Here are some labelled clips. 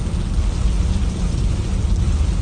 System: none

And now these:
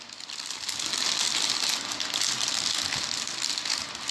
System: none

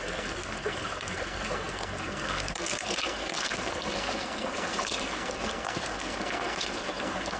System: codec, SNAC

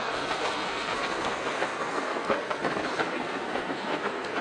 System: codec, SNAC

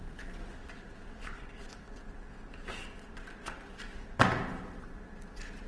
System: none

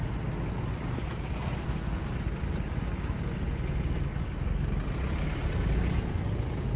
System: none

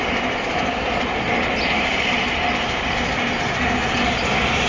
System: none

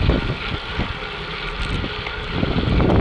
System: none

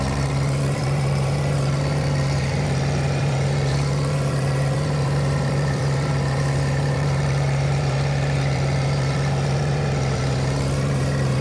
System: vocoder, BigVGAN v2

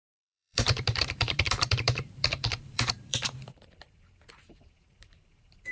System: vocoder, BigVGAN v2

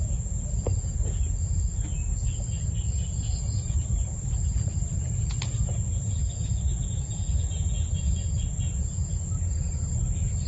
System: none